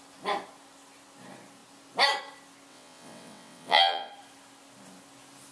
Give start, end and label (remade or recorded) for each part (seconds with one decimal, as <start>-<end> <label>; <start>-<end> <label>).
0.0-2.7 recorded; 2.7-4.1 remade; 4.1-5.5 recorded